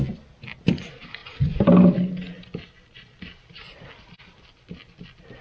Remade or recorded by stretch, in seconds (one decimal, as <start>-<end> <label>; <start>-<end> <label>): 0.0-5.4 recorded